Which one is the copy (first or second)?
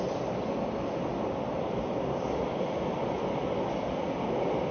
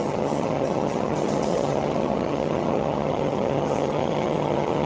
second